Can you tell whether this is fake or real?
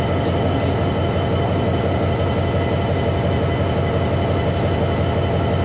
real